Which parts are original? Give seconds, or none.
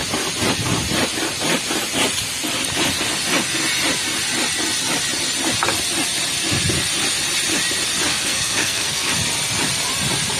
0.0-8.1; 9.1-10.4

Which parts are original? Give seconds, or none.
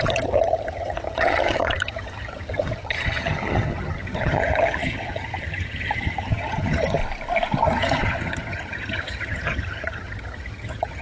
7.0-7.6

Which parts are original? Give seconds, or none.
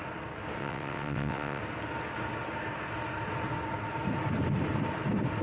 0.0-0.6; 1.6-5.4